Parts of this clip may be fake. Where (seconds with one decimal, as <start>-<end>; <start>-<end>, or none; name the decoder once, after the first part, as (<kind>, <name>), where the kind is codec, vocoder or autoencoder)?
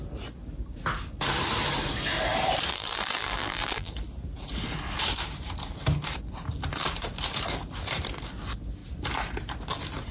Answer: 2.7-3.9 (vocoder, BigVGAN v2)